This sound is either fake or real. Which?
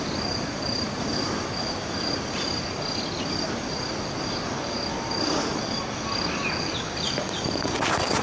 real